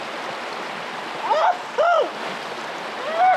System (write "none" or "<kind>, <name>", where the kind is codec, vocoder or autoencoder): none